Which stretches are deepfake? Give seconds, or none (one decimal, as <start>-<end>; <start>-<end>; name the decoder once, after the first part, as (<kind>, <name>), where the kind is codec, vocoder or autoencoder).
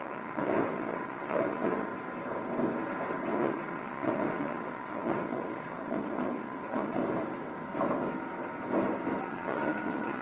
0.0-1.9 (vocoder, Vocos); 3.3-7.0; 9.2-10.2